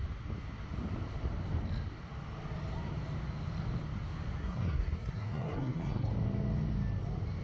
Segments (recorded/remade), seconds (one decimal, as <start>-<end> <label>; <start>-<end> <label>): 0.0-4.4 recorded; 4.4-6.1 remade; 6.1-7.4 recorded